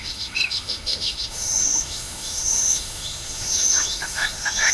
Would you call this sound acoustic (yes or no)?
no